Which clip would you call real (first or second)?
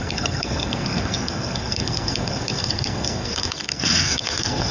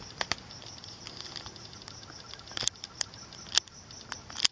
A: second